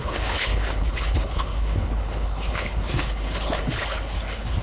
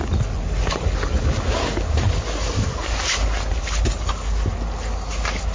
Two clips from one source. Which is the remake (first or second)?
first